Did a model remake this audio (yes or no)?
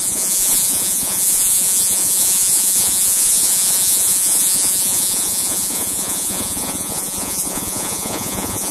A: yes